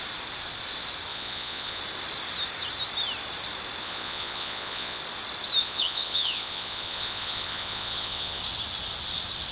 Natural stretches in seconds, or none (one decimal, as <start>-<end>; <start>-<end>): 0.0-1.1; 1.8-3.8; 5.0-5.6; 8.4-9.5